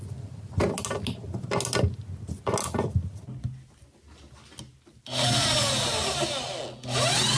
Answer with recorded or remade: recorded